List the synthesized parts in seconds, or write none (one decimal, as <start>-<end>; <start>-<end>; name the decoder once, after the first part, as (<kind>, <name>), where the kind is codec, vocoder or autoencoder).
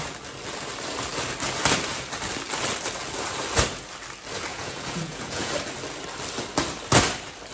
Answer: 4.5-5.5 (vocoder, Vocos)